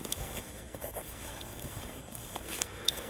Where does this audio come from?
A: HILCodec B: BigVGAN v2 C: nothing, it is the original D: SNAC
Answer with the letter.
D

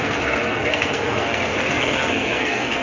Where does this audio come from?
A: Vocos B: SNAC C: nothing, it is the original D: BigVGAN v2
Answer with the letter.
B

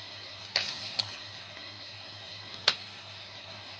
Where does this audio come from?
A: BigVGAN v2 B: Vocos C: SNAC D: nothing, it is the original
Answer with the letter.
C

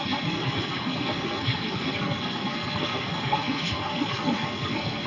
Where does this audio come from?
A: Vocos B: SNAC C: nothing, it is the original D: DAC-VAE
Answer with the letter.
B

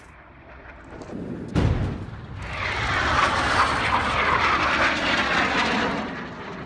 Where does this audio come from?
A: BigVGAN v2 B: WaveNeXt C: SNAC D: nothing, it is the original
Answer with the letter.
D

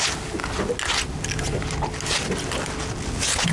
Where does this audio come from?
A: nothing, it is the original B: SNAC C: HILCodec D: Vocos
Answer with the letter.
A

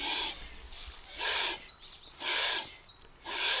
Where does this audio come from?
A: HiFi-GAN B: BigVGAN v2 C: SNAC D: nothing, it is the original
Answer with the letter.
D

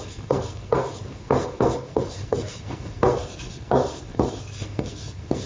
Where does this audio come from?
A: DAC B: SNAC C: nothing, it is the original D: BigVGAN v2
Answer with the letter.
B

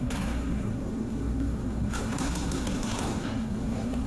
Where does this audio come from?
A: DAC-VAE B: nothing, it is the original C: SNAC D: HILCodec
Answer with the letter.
C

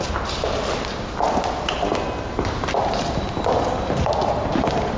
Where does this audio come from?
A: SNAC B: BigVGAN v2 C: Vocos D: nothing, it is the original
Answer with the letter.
D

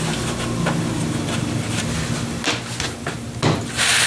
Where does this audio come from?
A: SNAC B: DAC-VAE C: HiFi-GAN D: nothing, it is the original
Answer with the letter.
D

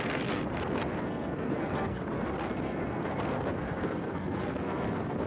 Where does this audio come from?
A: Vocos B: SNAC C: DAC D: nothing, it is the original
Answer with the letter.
B